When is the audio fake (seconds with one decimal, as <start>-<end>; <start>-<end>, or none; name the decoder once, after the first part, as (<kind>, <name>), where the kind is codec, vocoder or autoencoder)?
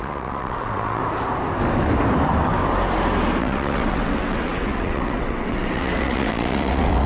0.0-1.0 (vocoder, WaveNeXt); 3.4-7.1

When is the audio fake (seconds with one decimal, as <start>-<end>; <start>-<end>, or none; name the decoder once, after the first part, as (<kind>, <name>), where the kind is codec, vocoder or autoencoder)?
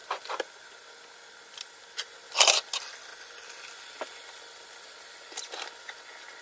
none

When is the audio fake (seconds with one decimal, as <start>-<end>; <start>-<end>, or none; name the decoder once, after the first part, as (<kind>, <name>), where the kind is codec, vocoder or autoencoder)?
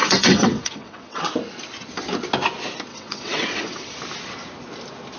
0.0-1.3 (vocoder, WaveNeXt); 2.9-4.0